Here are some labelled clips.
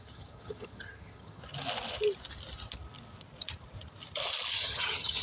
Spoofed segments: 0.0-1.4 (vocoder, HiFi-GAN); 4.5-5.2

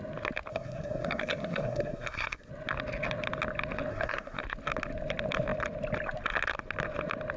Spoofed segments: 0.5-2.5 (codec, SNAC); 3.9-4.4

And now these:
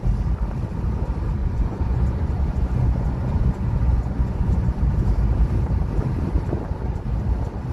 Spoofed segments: 1.4-4.8 (vocoder, Vocos)

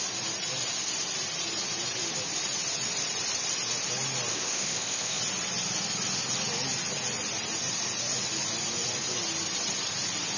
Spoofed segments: 4.3-5.2 (codec, ZipCodec)